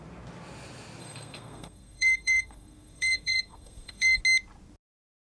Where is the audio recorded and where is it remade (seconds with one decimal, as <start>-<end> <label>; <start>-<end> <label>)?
0.0-1.0 recorded; 1.0-4.2 remade; 4.2-5.4 recorded